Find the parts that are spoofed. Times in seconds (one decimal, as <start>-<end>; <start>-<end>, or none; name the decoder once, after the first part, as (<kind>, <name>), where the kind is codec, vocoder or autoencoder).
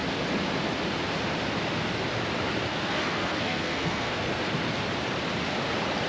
2.7-4.5 (codec, SNAC)